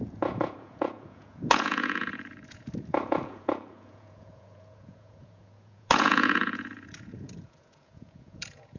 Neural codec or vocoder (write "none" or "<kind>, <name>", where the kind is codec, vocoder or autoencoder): vocoder, Vocos